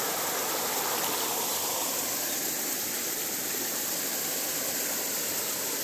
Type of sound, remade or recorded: recorded